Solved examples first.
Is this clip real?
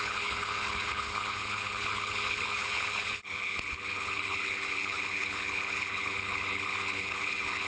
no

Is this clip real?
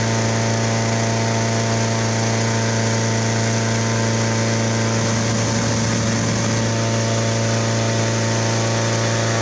yes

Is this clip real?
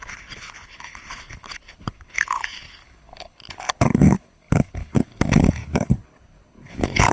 no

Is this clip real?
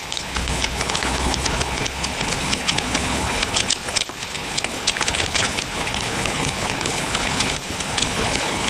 no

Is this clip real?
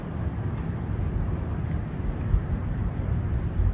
yes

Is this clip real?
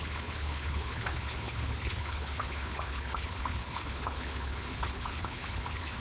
no